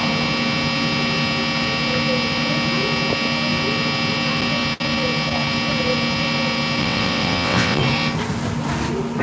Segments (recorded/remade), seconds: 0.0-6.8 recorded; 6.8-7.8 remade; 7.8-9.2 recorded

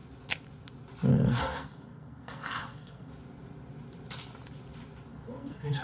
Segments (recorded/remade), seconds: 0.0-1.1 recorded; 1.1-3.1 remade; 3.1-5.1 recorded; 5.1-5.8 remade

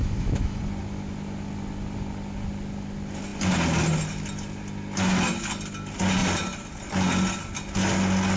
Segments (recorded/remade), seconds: 0.0-0.6 remade; 0.6-8.4 recorded

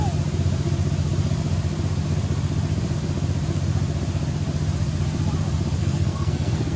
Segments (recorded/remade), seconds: 0.0-5.8 recorded; 5.8-6.8 remade

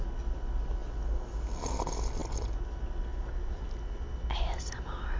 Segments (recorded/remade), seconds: 0.0-5.2 recorded